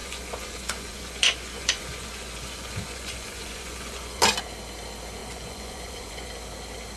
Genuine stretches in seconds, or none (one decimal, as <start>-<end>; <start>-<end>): 4.2-5.2; 6.3-7.0